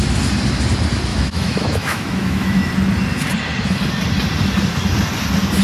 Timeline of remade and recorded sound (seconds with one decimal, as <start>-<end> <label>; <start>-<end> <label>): 0.0-1.1 recorded; 1.1-2.7 remade; 2.7-5.6 recorded